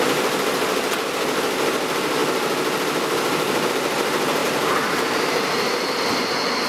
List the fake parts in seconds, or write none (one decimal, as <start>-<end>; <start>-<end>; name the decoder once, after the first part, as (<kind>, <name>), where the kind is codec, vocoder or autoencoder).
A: 2.2-3.7 (vocoder, BigVGAN v2); 4.4-6.0